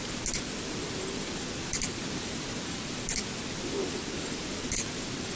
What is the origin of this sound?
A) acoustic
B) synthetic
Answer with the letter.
A